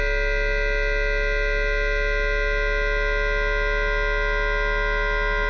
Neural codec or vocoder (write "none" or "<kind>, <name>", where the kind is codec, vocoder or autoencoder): none